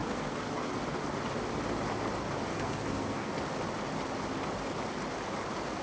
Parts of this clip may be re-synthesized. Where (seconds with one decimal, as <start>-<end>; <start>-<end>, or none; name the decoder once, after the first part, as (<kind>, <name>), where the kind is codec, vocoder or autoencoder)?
0.0-0.7 (codec, SNAC); 2.5-3.3